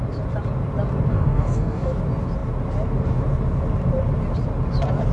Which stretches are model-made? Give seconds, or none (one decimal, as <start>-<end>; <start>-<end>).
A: 1.1-1.9